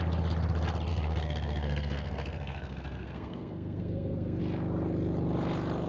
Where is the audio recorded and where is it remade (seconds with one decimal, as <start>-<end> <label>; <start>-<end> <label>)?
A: 0.0-0.9 recorded; 0.9-4.4 remade; 4.4-5.9 recorded